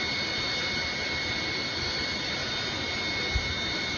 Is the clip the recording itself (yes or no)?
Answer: yes